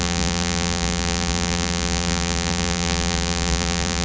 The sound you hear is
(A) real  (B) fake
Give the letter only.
B